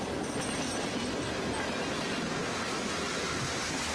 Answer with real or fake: real